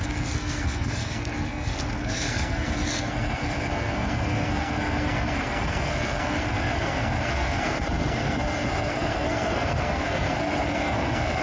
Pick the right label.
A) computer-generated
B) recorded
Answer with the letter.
A